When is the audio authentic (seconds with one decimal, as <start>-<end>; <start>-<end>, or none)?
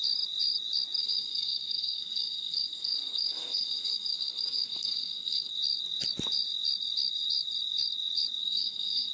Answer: 0.0-1.0; 5.5-8.4